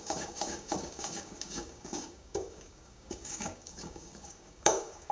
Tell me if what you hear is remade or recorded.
remade